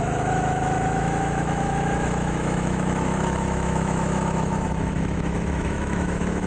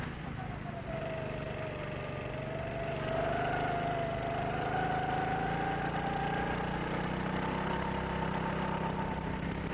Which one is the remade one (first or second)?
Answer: first